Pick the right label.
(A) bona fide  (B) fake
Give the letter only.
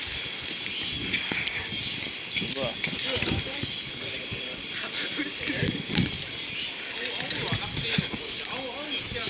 A